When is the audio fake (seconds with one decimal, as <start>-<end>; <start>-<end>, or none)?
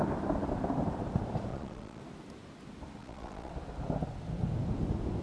1.5-2.0; 3.0-3.5